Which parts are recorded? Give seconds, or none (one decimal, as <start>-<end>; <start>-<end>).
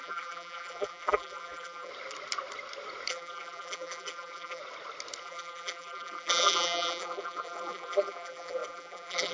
1.9-3.1; 4.6-5.2